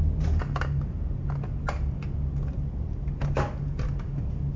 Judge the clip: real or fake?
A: real